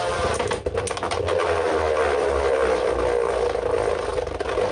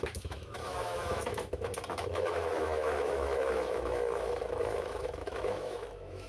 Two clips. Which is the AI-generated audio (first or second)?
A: second